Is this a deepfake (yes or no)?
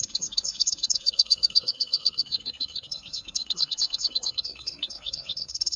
yes